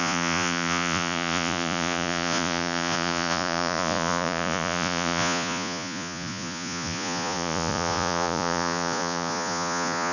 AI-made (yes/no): yes